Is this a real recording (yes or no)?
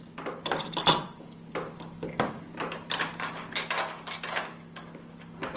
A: yes